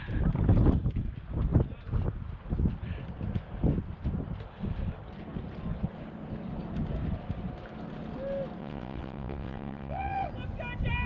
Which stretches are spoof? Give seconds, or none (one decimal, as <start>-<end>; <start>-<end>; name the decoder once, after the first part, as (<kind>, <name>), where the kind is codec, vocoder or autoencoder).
8.6-10.3 (vocoder, WaveNeXt)